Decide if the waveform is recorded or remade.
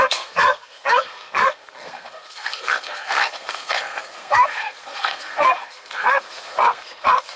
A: remade